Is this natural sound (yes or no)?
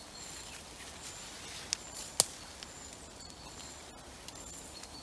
yes